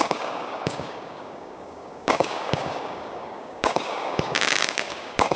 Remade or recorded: remade